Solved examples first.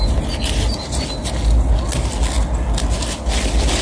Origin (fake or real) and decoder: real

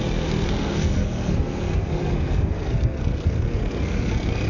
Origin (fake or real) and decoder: fake, codec, SNAC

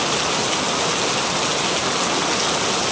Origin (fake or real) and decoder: real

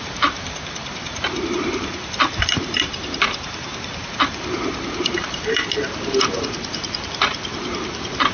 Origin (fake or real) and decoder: fake, vocoder, BigVGAN v2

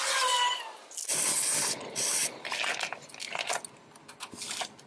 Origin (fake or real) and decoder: real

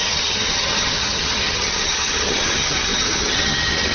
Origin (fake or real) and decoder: fake, vocoder, HiFi-GAN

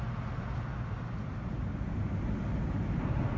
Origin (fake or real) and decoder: real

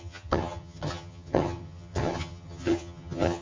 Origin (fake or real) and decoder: fake, vocoder, HiFi-GAN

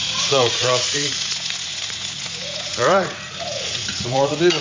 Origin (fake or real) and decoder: fake, vocoder, Vocos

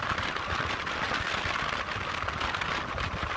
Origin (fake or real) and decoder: real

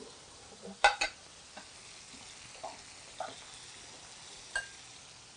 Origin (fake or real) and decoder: real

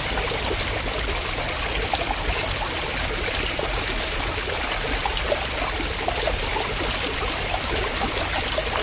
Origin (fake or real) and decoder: real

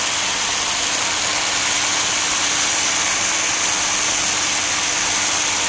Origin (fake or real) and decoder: real